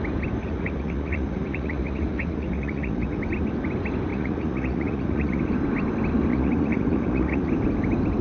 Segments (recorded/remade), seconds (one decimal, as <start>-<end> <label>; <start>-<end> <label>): 0.0-0.4 recorded; 0.4-3.2 remade; 3.2-4.1 recorded; 4.1-5.4 remade; 5.4-6.3 recorded; 6.3-7.5 remade; 7.5-8.2 recorded